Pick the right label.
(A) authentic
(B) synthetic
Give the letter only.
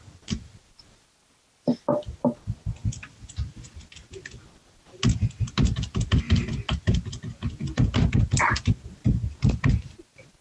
A